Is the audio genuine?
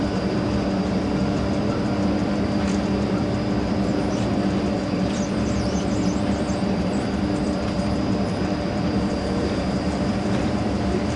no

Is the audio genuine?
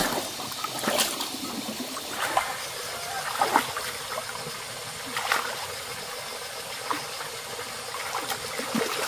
yes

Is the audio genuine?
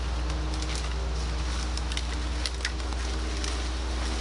yes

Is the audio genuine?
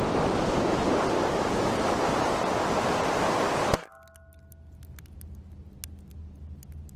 yes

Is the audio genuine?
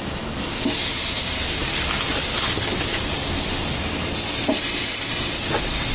yes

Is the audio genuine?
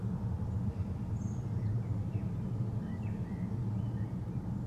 yes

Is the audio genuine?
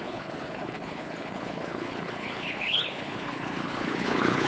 no